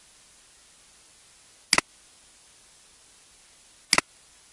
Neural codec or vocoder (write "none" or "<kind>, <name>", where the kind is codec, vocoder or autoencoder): none